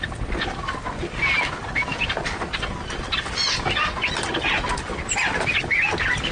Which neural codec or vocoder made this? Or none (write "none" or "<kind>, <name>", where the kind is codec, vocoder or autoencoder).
none